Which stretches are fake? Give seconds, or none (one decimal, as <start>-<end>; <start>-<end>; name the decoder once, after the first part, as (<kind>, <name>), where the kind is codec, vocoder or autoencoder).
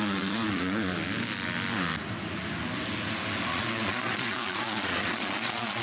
0.0-0.9 (vocoder, Vocos); 3.5-5.8